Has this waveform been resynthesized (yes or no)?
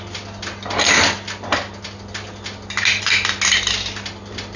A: no